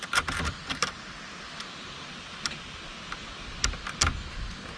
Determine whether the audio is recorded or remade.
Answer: recorded